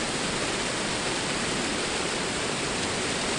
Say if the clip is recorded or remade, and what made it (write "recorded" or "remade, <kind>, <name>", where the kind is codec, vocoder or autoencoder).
recorded